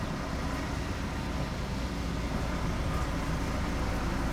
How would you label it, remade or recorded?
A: recorded